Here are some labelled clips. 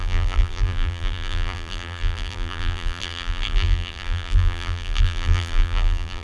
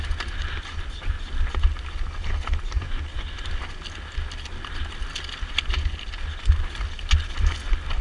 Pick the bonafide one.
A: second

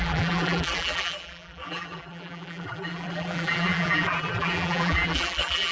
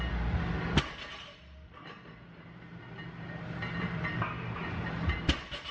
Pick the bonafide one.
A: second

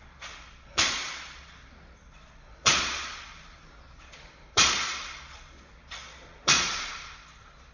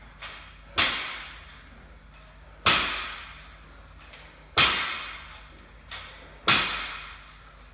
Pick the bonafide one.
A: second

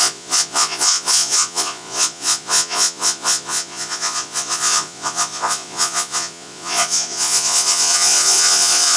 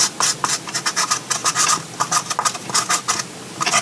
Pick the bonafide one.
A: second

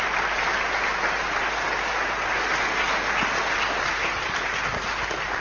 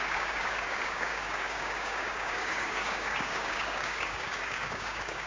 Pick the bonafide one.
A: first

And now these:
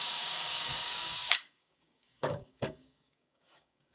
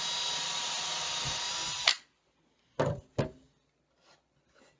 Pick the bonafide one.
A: second